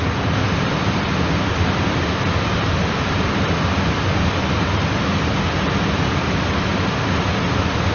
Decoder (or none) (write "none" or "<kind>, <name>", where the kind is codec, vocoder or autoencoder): none